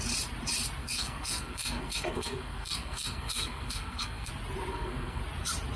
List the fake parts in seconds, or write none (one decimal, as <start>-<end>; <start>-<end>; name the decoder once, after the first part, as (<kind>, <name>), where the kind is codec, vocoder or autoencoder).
0.8-4.3 (codec, SNAC); 4.7-5.2